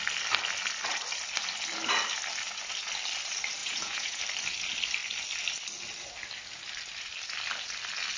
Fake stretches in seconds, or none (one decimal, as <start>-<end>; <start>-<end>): 3.6-4.2

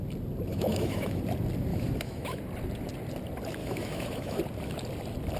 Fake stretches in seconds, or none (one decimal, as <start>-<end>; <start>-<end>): 0.5-1.2; 1.7-2.4; 3.6-4.4

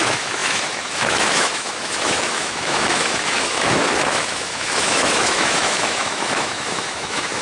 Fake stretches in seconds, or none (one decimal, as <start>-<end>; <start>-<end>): 0.0-7.4

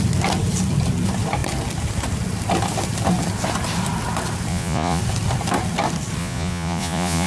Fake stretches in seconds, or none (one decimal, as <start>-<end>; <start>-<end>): 4.5-5.0; 6.2-7.3

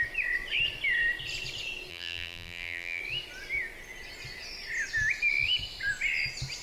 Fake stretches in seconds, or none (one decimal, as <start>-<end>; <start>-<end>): 1.9-3.0

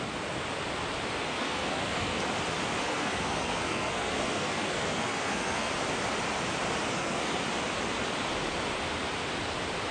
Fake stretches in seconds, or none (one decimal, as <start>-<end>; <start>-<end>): 1.3-2.2; 2.8-5.7; 6.9-7.4